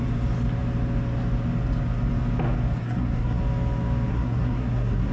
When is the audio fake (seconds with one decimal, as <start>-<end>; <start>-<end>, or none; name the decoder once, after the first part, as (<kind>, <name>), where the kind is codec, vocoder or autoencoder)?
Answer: 2.8-3.4 (codec, SNAC); 4.1-5.1

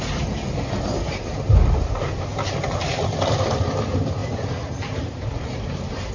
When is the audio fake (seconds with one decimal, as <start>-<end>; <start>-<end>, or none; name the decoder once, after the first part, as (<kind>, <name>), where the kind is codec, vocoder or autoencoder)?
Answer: 2.3-3.0 (vocoder, BigVGAN v2); 4.2-6.1

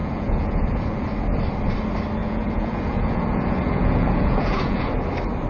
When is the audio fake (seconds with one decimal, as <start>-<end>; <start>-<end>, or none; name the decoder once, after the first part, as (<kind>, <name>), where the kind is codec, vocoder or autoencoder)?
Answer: 0.0-1.0 (vocoder, Vocos); 2.2-4.9

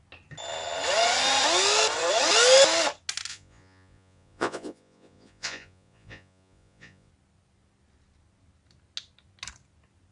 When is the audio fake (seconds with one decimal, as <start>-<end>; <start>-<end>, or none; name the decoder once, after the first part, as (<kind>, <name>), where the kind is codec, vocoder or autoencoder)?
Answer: 3.3-7.1 (vocoder, Vocos)

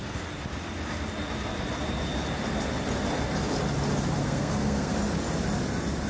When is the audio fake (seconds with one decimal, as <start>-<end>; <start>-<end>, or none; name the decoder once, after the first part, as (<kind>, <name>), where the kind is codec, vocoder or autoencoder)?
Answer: 4.2-4.9 (codec, SNAC)

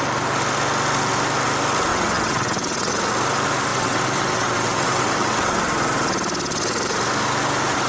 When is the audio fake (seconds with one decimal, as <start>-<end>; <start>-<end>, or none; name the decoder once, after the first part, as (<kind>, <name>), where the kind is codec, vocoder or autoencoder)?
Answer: 1.9-2.9 (vocoder, WaveNeXt); 3.7-5.6

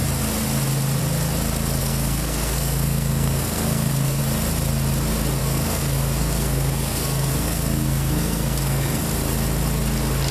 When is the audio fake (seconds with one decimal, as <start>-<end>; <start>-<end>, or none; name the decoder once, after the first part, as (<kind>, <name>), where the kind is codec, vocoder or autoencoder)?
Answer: 1.8-4.2 (codec, SNAC); 5.4-9.0

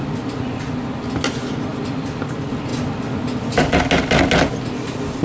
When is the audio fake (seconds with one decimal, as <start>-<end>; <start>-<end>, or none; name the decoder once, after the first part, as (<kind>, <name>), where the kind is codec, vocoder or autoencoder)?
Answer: none